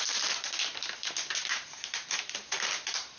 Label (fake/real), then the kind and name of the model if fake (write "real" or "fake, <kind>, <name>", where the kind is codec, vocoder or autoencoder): fake, vocoder, BigVGAN v2